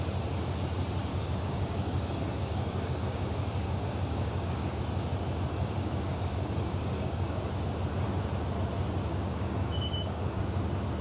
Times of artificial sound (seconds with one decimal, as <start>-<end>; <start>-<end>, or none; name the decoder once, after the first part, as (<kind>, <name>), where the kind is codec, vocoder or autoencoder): 1.1-4.8 (codec, DAC); 5.5-7.4; 9.1-10.4